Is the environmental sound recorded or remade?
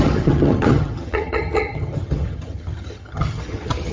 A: remade